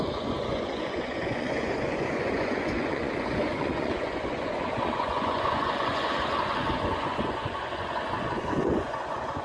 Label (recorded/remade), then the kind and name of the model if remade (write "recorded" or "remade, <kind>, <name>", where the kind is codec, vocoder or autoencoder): remade, vocoder, Vocos